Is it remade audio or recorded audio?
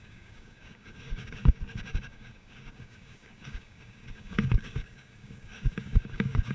remade